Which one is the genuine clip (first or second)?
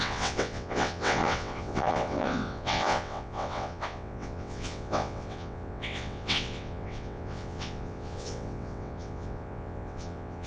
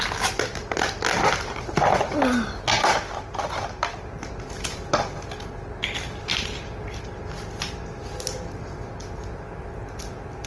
second